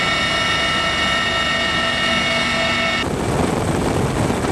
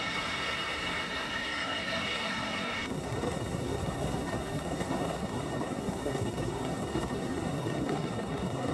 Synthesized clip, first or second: second